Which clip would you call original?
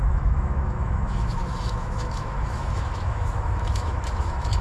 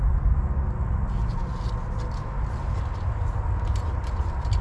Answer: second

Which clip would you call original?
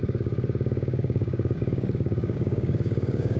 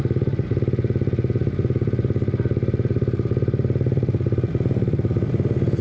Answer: second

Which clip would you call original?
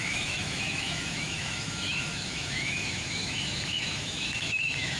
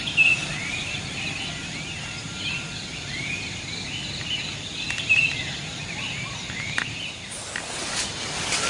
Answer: second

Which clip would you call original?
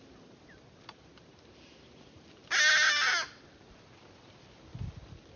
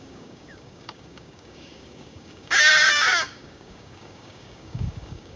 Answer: first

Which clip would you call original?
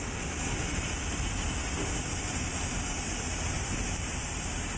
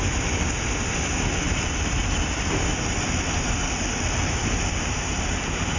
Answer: first